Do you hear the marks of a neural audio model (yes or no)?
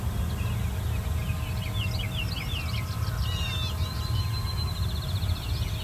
no